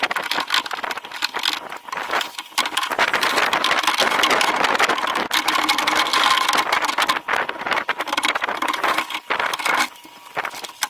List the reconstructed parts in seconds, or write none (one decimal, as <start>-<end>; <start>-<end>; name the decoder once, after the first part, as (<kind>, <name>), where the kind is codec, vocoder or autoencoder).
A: 7.7-9.0 (vocoder, BigVGAN v2)